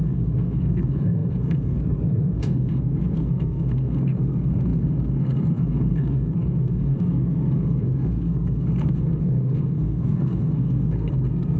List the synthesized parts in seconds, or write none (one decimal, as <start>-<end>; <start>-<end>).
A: 0.0-11.6